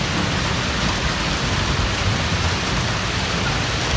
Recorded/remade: recorded